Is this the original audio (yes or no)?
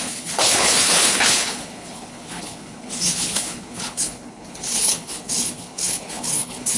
no